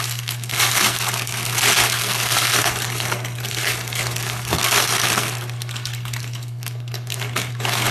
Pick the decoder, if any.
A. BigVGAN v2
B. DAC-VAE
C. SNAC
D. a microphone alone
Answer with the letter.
C